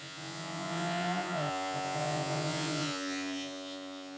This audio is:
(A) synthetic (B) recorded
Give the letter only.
A